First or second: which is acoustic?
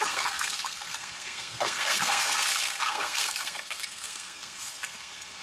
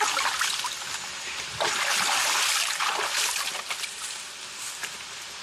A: second